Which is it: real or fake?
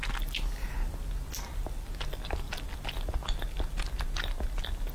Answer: real